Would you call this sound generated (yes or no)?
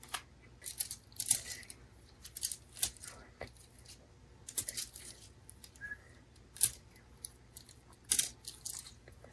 no